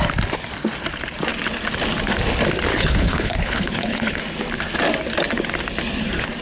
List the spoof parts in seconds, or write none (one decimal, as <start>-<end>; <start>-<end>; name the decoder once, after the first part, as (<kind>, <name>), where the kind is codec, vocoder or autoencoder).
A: 2.7-4.2 (codec, HILCodec)